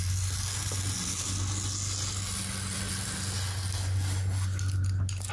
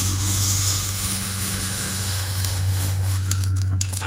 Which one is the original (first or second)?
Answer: first